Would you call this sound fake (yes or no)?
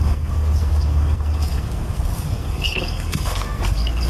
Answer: yes